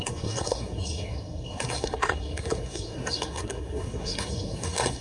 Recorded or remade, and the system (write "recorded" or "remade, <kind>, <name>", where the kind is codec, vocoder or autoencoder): remade, codec, SNAC